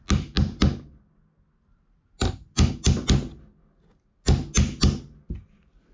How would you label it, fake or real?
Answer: real